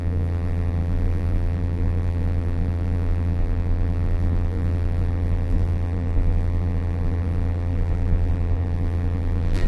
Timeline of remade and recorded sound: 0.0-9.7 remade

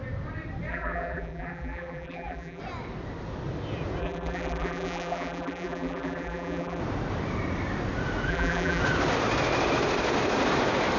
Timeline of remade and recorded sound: 0.0-0.7 recorded; 0.7-2.6 remade; 2.6-4.0 recorded; 4.0-6.8 remade; 6.8-8.3 recorded; 8.3-8.8 remade; 8.8-11.0 recorded

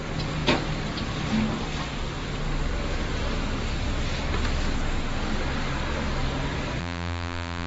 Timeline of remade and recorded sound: 0.0-6.8 recorded; 6.8-7.7 remade

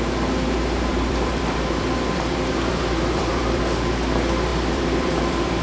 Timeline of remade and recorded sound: 0.0-0.9 recorded; 0.9-3.6 remade; 3.6-4.5 recorded; 4.5-5.6 remade

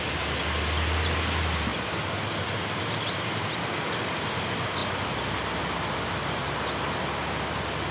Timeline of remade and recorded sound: 0.0-7.9 recorded

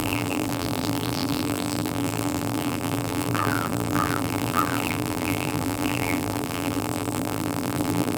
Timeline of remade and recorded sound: 0.0-8.2 remade

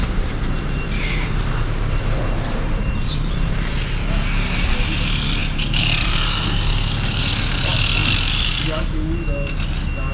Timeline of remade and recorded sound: 0.0-3.8 remade; 3.8-5.4 recorded; 5.4-6.2 remade; 6.2-10.1 recorded

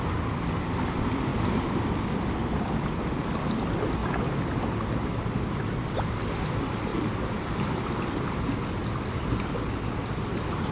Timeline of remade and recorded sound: 0.0-4.0 remade; 4.0-5.3 recorded; 5.3-8.8 remade; 8.8-10.1 recorded; 10.1-10.7 remade